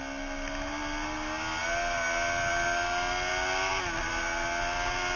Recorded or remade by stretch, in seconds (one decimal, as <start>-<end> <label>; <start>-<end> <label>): 0.0-5.2 recorded